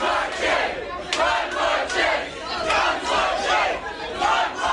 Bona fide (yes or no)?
yes